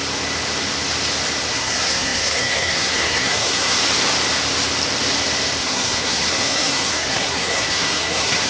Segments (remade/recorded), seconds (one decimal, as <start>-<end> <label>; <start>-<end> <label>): 0.0-1.5 recorded; 1.5-3.8 remade; 3.8-5.6 recorded; 5.6-8.5 remade

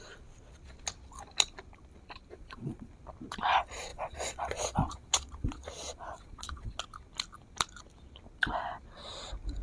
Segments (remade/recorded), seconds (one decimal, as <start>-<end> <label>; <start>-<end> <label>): 0.0-2.3 recorded; 2.3-2.9 remade; 2.9-3.9 recorded; 3.9-6.8 remade; 6.8-9.6 recorded

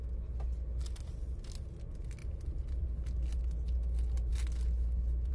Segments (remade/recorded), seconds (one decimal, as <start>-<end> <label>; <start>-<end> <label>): 0.0-5.3 recorded

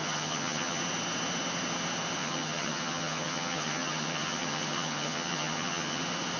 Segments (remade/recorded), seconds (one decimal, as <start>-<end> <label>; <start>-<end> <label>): 0.0-0.8 remade; 0.8-2.2 recorded; 2.2-6.0 remade; 6.0-6.4 recorded

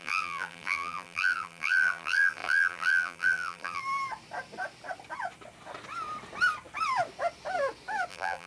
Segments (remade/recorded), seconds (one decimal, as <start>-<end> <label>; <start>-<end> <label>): 0.0-3.8 remade; 3.8-8.1 recorded; 8.1-8.5 remade